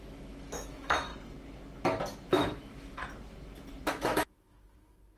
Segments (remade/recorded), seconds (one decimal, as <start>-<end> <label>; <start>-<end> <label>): 0.0-1.1 remade; 1.1-2.3 recorded; 2.3-3.0 remade; 3.0-3.9 recorded; 3.9-5.2 remade